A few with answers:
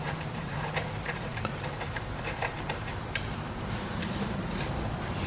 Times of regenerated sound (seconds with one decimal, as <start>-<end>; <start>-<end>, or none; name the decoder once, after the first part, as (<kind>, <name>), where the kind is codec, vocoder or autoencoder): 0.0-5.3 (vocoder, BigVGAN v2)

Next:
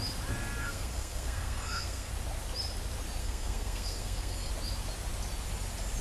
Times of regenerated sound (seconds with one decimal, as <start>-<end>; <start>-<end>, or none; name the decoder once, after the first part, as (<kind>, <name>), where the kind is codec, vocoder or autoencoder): 0.6-2.1 (codec, SNAC); 3.2-4.5

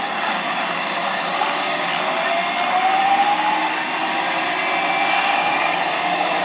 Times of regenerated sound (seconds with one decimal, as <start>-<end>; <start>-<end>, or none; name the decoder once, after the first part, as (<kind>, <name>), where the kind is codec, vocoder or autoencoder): 0.0-1.9 (codec, DAC); 5.1-6.4

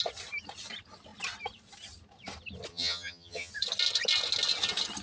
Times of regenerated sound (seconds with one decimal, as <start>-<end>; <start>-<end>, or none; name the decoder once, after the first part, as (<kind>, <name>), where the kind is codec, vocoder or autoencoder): 2.7-3.5 (vocoder, HiFi-GAN)

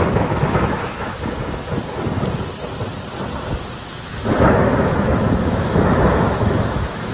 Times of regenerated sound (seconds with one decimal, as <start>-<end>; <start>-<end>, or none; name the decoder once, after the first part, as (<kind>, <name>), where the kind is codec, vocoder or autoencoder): 0.0-1.6 (autoencoder, DAC-VAE); 3.8-7.1

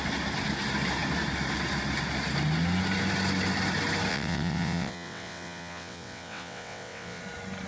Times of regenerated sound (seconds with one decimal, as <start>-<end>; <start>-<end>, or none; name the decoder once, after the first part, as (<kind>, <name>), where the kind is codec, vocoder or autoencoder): 4.1-7.2 (vocoder, WaveNeXt)